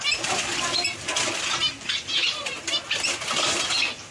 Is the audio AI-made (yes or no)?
no